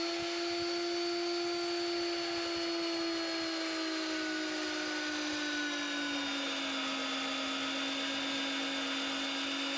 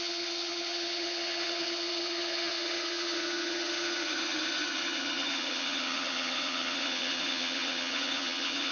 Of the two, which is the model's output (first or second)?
second